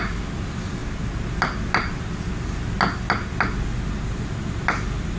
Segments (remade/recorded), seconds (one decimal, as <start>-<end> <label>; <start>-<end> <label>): 0.0-5.2 recorded